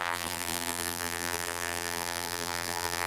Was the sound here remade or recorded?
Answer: remade